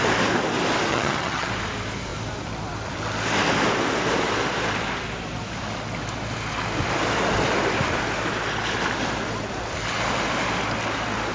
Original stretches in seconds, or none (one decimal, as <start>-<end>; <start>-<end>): 0.0-0.9; 1.5-11.3

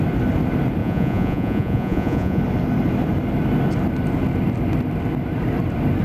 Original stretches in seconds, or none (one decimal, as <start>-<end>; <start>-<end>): 0.0-0.8; 2.4-6.0

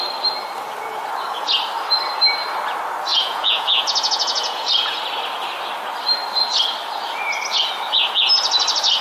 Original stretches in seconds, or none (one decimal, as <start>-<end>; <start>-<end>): 0.0-3.1; 5.0-9.0

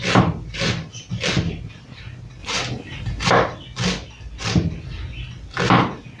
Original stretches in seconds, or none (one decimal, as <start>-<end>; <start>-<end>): 0.0-6.2

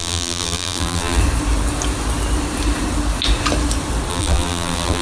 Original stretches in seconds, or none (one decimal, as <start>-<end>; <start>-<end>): 1.2-4.1

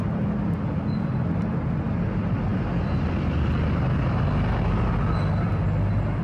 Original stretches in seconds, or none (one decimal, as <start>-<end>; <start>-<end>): 0.0-6.2

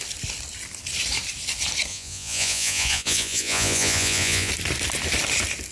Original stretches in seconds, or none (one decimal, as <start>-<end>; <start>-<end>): 0.0-1.9; 4.5-5.7

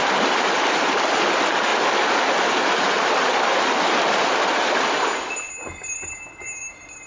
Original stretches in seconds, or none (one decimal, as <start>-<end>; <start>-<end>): 0.0-7.1